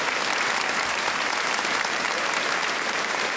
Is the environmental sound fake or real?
fake